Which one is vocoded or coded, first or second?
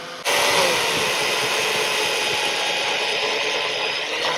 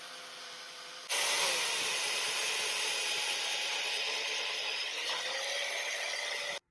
second